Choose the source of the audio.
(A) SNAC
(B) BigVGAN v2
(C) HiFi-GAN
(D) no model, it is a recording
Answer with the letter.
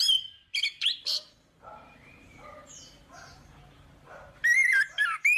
B